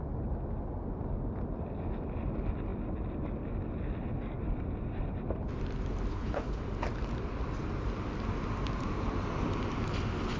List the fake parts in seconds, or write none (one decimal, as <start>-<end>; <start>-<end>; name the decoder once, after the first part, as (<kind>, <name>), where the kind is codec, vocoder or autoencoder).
6.1-6.6 (codec, HILCodec)